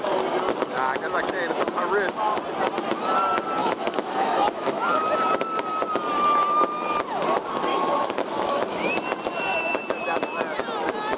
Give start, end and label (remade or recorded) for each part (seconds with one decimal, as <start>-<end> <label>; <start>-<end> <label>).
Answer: 0.0-3.6 recorded; 3.6-5.0 remade; 5.0-7.7 recorded; 7.7-8.9 remade; 8.9-11.2 recorded